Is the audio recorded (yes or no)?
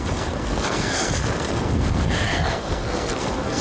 no